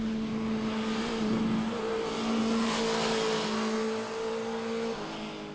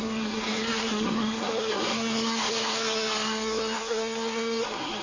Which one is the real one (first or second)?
first